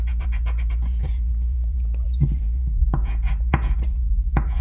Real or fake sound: fake